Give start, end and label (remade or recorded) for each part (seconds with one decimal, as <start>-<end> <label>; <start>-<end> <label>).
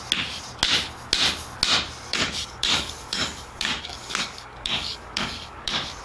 0.0-2.1 recorded; 2.1-6.0 remade